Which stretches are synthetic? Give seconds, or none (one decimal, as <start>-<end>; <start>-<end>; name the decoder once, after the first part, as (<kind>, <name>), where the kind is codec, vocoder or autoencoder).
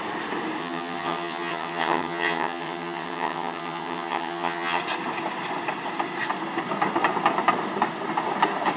0.6-4.8 (vocoder, HiFi-GAN)